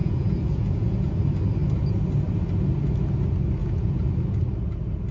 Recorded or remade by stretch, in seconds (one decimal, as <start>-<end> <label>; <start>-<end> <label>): 0.0-1.1 remade; 1.1-3.6 recorded; 3.6-4.1 remade; 4.1-5.1 recorded